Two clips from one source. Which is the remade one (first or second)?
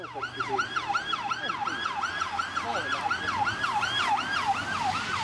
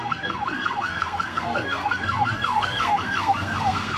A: second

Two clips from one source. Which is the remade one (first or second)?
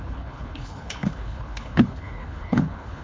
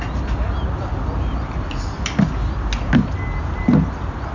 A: first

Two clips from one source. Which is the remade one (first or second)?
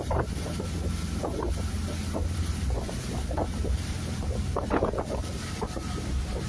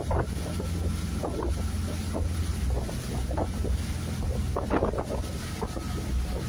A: first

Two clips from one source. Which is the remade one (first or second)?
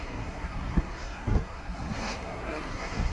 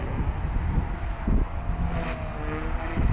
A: first